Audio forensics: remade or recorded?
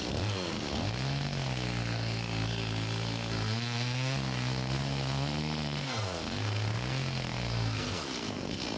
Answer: remade